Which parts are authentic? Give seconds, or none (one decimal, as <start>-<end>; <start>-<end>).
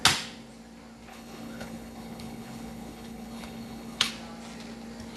0.0-1.1; 4.1-5.2